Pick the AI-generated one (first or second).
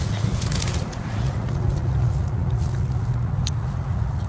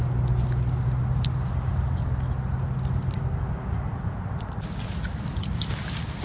first